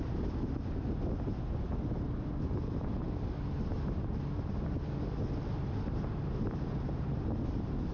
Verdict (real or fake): real